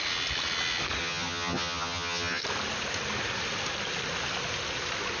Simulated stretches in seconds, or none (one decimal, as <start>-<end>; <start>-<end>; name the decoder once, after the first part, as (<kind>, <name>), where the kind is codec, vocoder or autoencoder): 1.0-2.4 (vocoder, HiFi-GAN)